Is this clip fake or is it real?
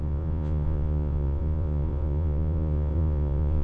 fake